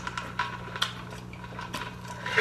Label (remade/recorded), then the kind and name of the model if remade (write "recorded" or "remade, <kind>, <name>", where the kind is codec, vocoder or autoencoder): recorded